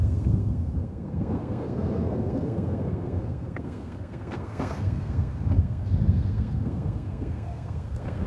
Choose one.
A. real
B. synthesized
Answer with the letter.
B